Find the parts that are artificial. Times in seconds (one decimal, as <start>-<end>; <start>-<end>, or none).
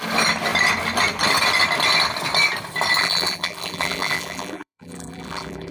3.0-5.7